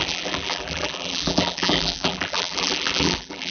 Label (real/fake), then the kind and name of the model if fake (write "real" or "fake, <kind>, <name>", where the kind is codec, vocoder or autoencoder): fake, vocoder, BigVGAN v2